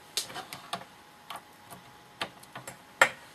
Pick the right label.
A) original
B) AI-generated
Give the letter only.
A